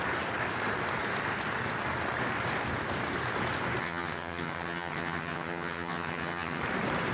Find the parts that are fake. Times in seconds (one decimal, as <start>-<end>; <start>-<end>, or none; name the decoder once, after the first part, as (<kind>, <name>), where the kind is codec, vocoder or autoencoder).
3.8-6.6 (vocoder, HiFi-GAN)